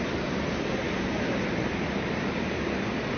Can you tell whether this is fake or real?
fake